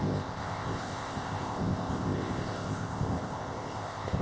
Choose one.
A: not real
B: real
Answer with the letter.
A